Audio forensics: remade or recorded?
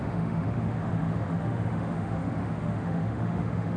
remade